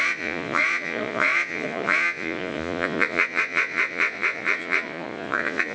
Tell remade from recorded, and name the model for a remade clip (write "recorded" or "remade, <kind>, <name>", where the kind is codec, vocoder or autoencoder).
remade, vocoder, Vocos